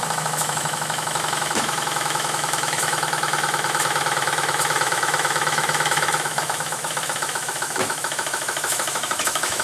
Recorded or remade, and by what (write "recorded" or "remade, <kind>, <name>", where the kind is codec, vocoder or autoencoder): remade, autoencoder, DAC-VAE